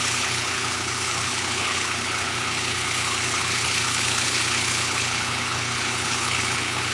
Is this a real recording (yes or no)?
no